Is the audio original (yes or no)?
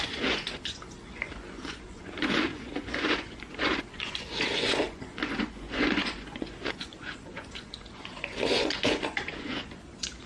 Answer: no